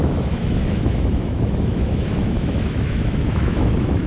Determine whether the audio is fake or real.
fake